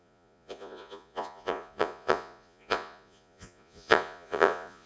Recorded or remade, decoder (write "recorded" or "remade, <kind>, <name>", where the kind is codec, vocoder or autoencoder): remade, vocoder, Vocos